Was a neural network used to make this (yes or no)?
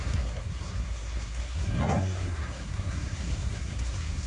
yes